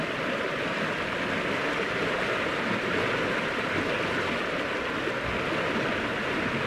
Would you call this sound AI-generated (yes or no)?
no